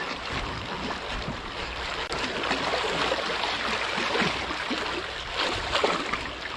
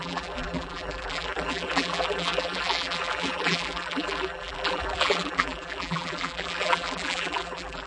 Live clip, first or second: first